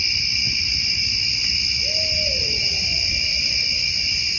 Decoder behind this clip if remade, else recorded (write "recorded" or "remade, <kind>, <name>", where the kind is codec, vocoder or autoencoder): recorded